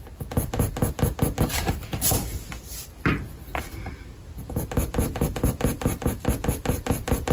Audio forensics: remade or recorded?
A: recorded